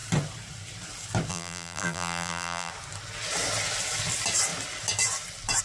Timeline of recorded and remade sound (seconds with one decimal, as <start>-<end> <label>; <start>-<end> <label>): 0.0-1.3 recorded; 1.3-2.7 remade; 2.7-5.6 recorded